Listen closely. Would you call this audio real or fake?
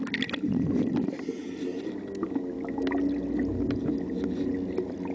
real